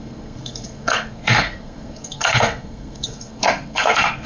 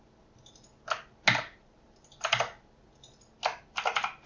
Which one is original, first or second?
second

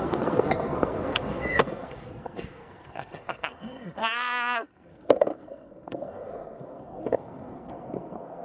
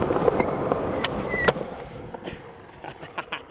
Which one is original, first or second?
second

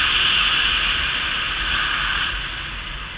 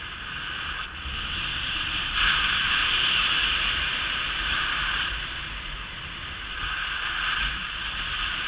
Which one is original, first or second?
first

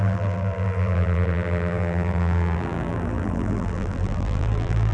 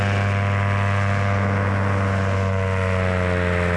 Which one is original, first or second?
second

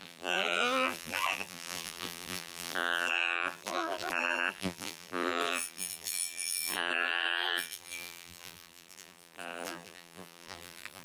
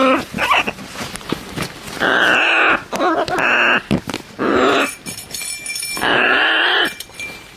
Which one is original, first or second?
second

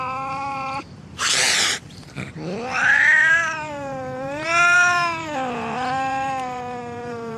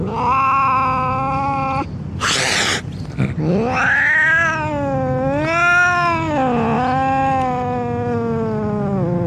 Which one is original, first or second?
second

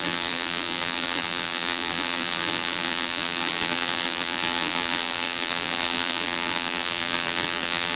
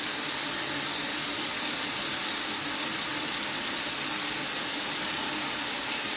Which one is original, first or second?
second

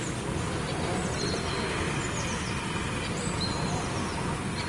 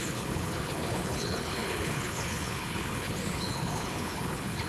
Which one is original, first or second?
first